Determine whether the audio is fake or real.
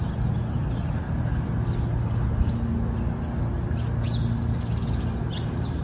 real